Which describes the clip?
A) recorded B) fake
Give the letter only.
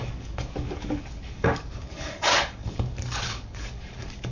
B